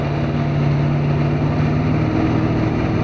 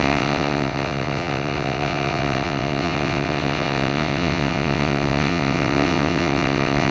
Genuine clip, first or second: first